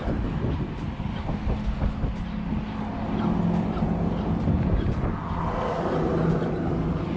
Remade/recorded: recorded